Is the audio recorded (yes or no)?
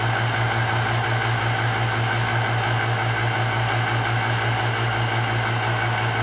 yes